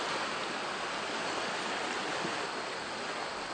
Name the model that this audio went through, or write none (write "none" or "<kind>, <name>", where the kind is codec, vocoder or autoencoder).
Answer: none